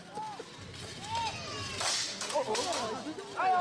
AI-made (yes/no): no